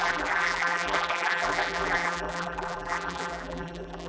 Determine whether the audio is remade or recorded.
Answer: remade